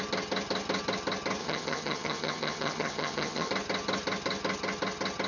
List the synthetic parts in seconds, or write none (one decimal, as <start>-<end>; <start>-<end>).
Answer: 1.4-3.5